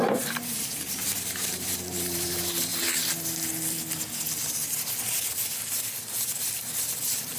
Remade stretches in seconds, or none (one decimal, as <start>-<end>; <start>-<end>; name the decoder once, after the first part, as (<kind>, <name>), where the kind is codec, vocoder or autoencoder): 0.0-2.7 (vocoder, BigVGAN v2)

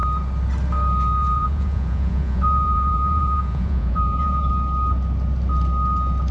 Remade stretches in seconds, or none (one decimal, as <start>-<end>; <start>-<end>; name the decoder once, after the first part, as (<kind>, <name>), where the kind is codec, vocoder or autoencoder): 1.2-4.5 (vocoder, Vocos)

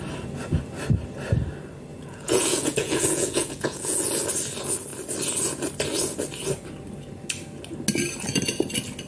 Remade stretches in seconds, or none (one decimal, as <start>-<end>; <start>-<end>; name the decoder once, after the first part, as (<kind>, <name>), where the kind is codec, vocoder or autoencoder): 1.9-4.1 (vocoder, Vocos)

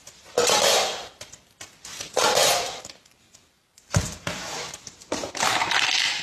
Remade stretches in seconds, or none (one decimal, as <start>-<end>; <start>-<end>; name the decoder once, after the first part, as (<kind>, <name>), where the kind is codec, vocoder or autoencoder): 2.4-5.7 (vocoder, BigVGAN v2)

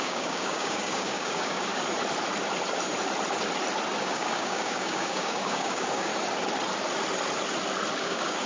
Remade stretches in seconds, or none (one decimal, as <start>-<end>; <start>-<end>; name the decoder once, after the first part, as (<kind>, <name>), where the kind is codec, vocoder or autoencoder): 0.0-1.7 (codec, DAC); 4.0-6.1; 8.0-8.5

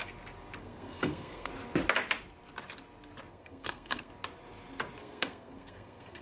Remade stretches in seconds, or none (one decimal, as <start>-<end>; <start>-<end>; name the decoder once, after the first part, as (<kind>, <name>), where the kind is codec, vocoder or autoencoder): 0.6-1.5 (codec, SNAC); 3.3-4.1; 5.0-6.2

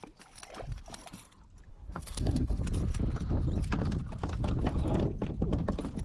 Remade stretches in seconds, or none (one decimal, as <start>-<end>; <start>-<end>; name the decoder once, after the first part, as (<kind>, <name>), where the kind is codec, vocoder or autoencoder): 1.7-2.6 (codec, SNAC)